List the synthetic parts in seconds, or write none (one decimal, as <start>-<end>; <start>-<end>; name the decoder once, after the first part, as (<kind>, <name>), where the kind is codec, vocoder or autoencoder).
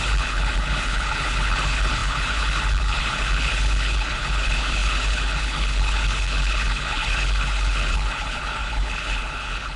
0.0-9.8 (codec, HILCodec)